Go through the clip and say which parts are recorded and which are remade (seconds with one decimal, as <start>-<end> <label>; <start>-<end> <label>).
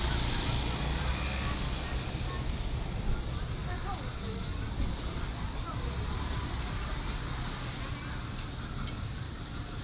0.0-9.8 recorded